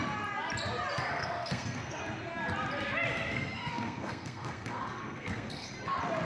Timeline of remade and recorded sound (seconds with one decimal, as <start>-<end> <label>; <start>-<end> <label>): 0.0-0.9 recorded; 0.9-2.0 remade; 2.0-3.1 recorded; 3.1-5.7 remade; 5.7-6.2 recorded